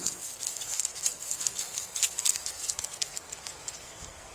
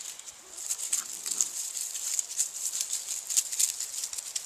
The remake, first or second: first